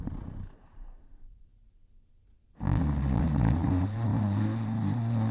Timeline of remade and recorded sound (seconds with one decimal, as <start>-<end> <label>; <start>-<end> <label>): 0.0-1.5 remade; 1.5-3.2 recorded; 3.2-4.1 remade; 4.1-5.3 recorded